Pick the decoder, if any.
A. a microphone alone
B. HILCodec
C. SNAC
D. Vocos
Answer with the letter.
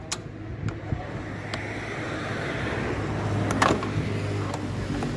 A